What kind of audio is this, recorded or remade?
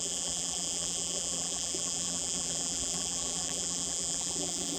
remade